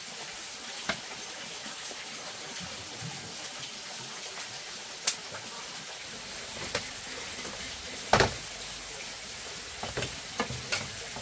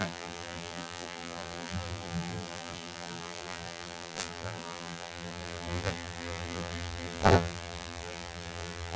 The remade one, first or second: second